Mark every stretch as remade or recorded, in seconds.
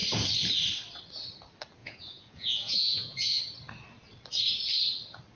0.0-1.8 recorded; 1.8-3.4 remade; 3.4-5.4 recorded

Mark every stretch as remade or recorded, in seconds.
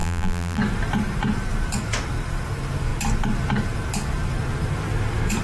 0.0-0.6 remade; 0.6-5.4 recorded